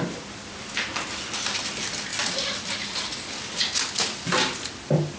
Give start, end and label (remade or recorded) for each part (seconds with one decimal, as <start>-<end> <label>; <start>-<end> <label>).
0.0-5.2 recorded